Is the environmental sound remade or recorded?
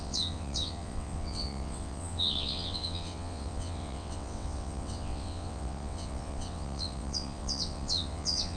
remade